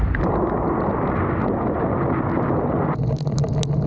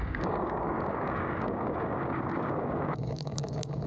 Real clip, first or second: first